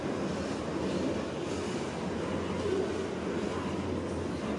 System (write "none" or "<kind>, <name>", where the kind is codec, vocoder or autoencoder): none